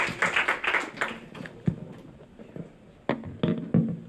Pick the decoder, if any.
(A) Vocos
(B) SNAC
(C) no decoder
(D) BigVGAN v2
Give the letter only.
C